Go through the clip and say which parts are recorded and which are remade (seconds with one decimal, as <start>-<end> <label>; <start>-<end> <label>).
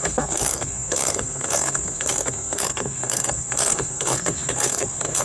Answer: 0.0-5.2 remade